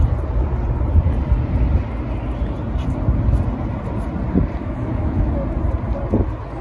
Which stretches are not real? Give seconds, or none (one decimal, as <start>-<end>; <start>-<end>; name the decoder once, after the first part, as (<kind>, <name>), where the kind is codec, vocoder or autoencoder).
4.6-5.3 (autoencoder, DAC-VAE)